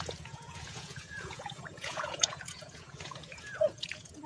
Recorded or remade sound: remade